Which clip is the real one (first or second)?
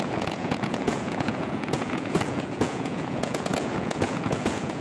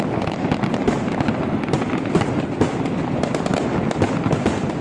second